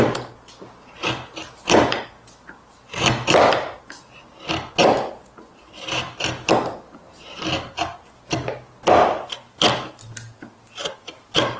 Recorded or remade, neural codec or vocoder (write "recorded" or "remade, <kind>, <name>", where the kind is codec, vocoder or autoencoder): recorded